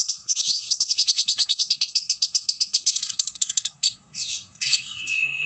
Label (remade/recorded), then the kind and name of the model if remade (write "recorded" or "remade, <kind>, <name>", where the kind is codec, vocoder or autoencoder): remade, codec, SNAC